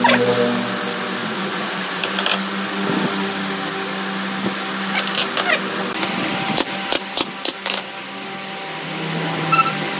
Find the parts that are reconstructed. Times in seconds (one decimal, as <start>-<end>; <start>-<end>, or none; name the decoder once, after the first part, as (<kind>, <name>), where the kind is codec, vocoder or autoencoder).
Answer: 1.2-2.0 (vocoder, Vocos)